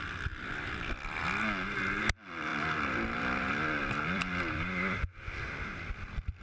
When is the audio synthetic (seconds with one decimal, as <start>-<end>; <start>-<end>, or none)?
0.0-1.2; 2.0-6.4